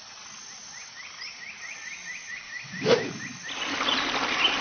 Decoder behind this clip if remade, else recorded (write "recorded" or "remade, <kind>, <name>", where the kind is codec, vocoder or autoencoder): recorded